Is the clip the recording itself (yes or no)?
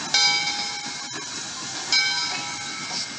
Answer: yes